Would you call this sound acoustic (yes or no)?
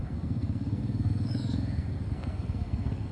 no